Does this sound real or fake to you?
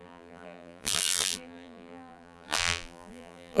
fake